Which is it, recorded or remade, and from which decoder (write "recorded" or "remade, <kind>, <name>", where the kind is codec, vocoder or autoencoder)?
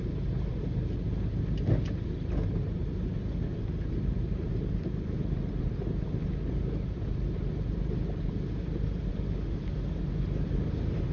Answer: recorded